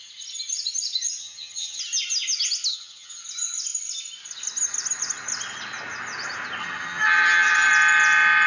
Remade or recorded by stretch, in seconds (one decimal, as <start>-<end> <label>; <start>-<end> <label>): 0.0-1.2 recorded; 1.2-1.8 remade; 1.8-2.7 recorded; 2.7-3.2 remade; 3.2-6.6 recorded; 6.6-7.7 remade; 7.7-8.5 recorded